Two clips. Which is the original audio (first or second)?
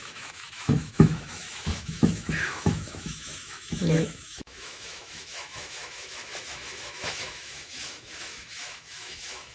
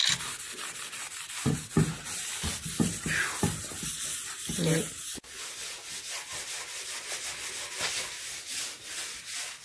second